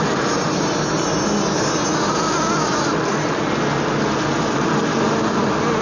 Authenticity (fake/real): real